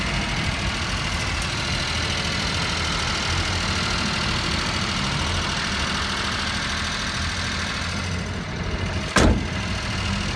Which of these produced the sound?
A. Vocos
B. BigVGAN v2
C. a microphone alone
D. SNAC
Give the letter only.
C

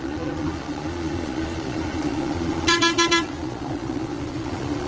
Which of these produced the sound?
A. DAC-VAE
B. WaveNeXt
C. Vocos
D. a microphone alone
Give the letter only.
C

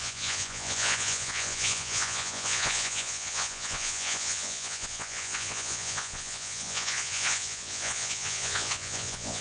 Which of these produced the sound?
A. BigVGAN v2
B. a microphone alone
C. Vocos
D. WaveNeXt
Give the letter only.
C